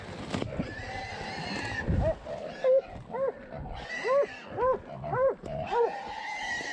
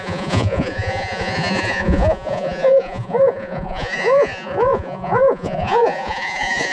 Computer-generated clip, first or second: second